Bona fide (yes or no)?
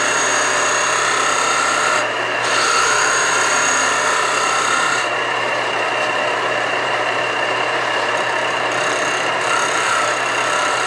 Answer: no